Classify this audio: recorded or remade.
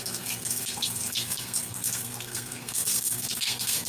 remade